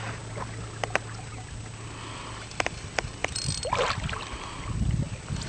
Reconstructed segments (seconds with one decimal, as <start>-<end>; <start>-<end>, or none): none